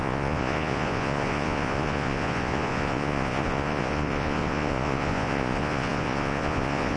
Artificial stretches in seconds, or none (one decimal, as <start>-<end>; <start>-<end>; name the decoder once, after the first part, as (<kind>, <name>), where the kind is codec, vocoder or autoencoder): 0.0-7.0 (vocoder, Vocos)